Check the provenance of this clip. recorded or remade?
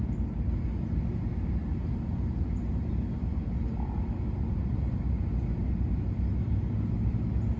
recorded